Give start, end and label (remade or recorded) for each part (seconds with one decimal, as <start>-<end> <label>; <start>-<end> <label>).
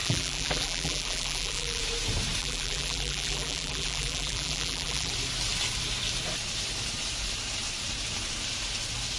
0.0-1.8 remade; 1.8-2.4 recorded; 2.4-5.1 remade; 5.1-9.2 recorded